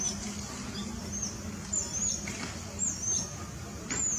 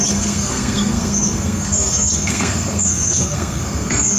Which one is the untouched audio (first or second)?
first